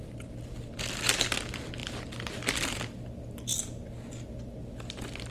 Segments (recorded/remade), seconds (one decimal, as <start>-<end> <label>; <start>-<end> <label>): 0.0-5.3 recorded